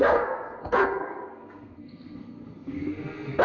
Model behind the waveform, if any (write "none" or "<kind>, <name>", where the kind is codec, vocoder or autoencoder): codec, SNAC